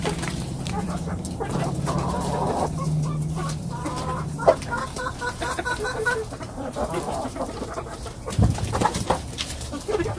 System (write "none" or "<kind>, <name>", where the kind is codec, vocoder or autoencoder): vocoder, BigVGAN v2